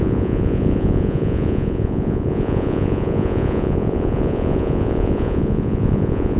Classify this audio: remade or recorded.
remade